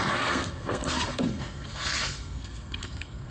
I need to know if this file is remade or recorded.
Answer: remade